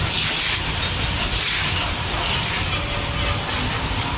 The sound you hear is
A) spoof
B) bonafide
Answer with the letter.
B